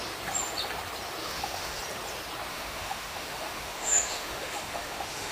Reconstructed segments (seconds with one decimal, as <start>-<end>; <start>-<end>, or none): 1.2-1.8; 2.5-5.3